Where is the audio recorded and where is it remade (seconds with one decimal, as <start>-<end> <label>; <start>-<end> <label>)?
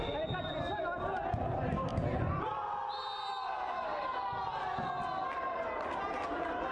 0.0-6.7 recorded